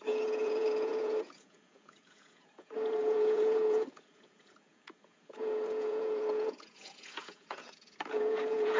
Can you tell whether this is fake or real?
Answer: fake